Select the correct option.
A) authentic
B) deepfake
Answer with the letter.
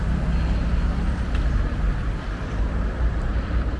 A